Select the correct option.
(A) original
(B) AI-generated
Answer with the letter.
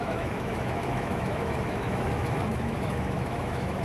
B